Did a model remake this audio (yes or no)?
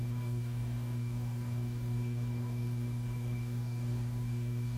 yes